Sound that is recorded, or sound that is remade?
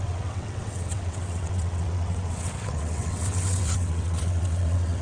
remade